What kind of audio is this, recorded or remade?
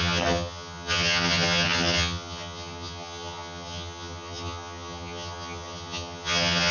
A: remade